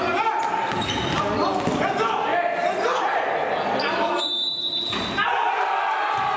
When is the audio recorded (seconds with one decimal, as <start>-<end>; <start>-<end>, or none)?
0.0-6.4